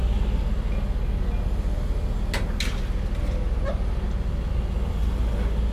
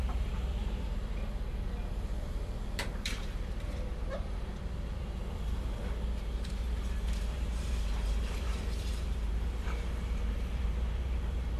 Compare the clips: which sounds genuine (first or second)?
first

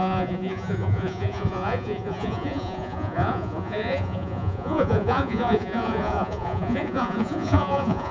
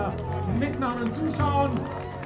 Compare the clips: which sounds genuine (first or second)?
second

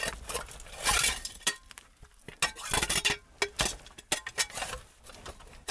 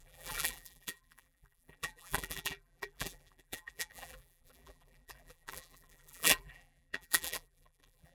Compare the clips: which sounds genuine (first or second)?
first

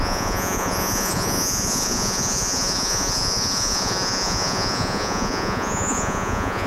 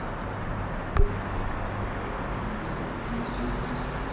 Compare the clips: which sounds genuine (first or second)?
second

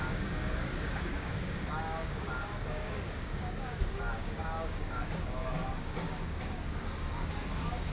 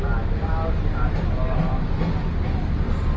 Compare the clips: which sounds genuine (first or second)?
second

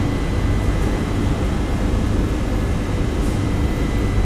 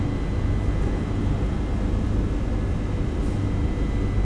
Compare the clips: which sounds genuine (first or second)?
second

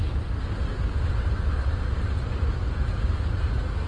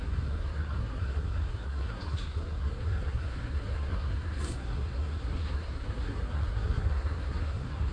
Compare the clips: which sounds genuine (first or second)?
first